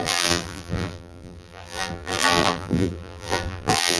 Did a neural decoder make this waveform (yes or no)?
yes